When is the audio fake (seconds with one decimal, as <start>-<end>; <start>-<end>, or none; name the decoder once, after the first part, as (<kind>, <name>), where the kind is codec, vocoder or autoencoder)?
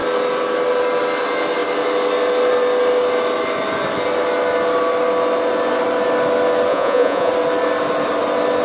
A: 6.7-7.3 (vocoder, Vocos)